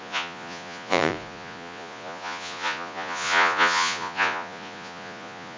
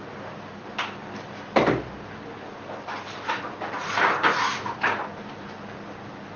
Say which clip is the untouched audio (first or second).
second